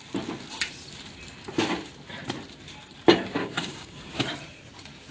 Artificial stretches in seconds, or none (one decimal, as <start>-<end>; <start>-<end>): 3.4-4.2